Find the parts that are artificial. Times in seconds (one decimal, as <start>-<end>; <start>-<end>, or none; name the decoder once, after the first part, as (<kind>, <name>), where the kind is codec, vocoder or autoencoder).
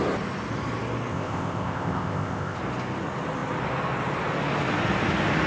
1.1-2.6 (codec, ZipCodec)